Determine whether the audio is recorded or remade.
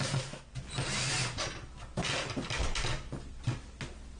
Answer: recorded